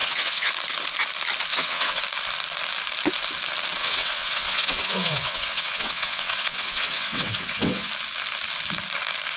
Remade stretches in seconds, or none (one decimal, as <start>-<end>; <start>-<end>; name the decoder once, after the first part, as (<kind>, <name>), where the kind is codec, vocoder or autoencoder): 0.0-0.5 (vocoder, WaveNeXt); 1.5-2.0; 3.8-7.9